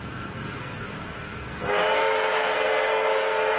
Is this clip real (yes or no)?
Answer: no